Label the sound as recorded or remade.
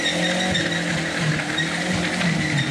recorded